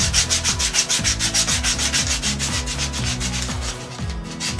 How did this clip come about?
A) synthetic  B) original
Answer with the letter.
B